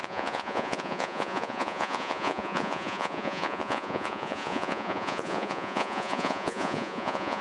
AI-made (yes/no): yes